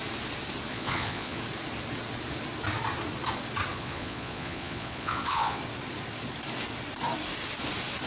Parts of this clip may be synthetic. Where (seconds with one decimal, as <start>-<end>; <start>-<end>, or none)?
0.7-1.4; 3.7-5.6